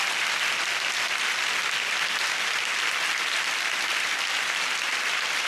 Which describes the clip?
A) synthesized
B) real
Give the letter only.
B